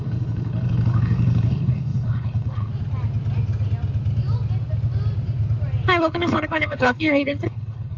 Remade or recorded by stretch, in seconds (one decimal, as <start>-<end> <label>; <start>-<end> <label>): 0.0-2.7 remade; 2.7-6.0 recorded; 6.0-8.0 remade